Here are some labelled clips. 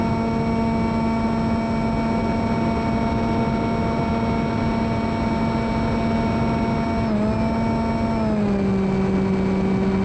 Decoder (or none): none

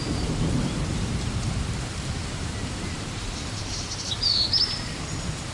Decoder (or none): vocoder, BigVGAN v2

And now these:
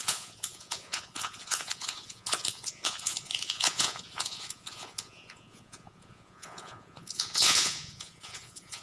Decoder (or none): vocoder, Vocos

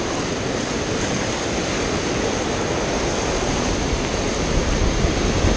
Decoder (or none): none